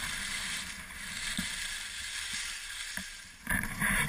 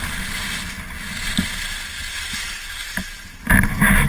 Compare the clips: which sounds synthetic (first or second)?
first